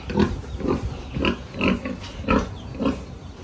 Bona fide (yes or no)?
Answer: yes